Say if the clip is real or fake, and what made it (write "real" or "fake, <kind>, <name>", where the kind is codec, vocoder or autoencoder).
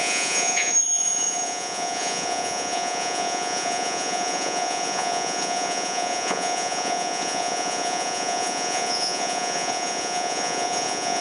fake, vocoder, Vocos